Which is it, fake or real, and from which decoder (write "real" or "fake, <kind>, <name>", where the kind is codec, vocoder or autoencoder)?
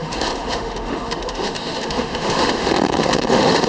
fake, autoencoder, DAC-VAE